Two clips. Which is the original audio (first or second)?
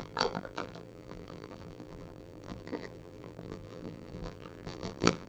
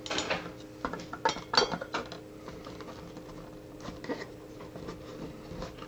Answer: second